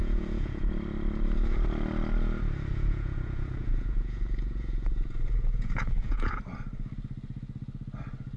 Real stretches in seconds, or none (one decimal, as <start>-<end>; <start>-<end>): 0.7-2.7; 6.4-8.4